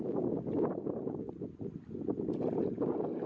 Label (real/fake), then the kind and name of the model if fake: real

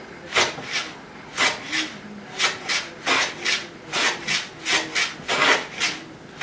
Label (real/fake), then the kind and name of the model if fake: real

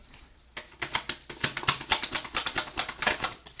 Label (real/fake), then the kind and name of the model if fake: real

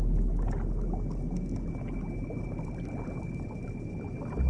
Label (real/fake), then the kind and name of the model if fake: real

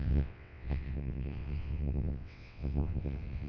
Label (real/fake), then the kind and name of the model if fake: fake, vocoder, WaveNeXt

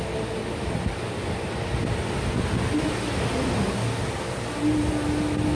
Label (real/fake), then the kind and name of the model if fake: real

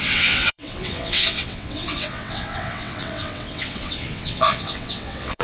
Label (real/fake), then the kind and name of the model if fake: fake, vocoder, WaveNeXt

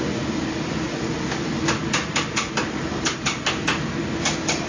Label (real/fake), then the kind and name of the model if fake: real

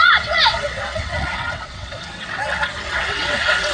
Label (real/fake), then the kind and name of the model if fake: fake, vocoder, WaveNeXt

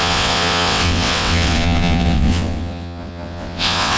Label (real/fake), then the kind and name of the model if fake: fake, vocoder, WaveNeXt